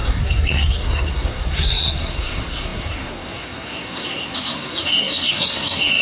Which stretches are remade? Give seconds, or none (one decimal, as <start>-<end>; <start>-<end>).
0.0-6.0